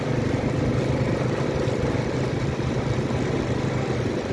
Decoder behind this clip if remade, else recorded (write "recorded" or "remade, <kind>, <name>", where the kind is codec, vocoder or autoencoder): remade, vocoder, BigVGAN v2